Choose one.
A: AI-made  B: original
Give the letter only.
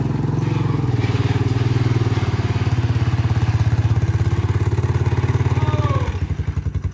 B